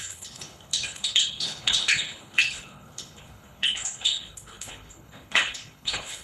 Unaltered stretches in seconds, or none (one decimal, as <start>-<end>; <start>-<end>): none